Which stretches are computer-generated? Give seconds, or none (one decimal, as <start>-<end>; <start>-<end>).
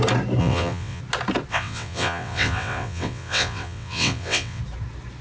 0.4-1.0; 1.5-4.6